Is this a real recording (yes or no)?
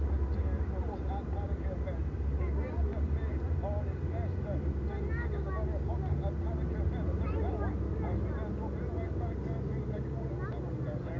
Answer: yes